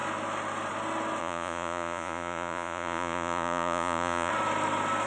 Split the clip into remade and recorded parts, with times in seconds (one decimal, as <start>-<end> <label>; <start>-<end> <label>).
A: 0.0-1.2 recorded; 1.2-4.3 remade; 4.3-5.1 recorded